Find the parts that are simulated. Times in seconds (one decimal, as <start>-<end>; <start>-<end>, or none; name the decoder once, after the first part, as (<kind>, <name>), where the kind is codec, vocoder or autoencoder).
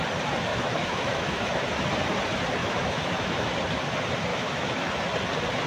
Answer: 0.5-1.6 (autoencoder, DAC-VAE); 2.6-3.5; 4.3-4.9